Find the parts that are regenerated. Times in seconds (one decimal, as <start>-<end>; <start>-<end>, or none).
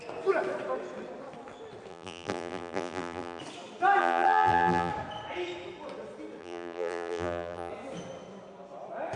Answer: 1.9-3.4; 4.0-4.9; 6.4-7.7